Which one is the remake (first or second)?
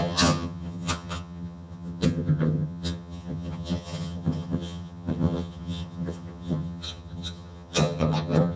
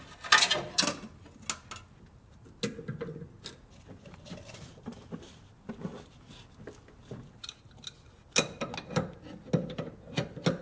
first